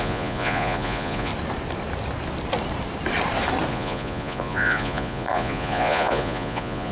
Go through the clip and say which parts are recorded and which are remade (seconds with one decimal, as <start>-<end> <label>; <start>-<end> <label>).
0.0-1.3 remade; 1.3-3.7 recorded; 3.7-6.9 remade